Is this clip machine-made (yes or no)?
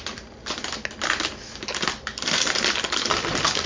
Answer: no